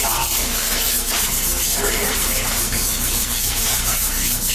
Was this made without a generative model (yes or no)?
no